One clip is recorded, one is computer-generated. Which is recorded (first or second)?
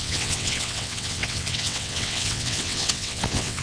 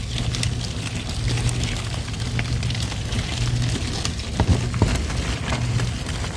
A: second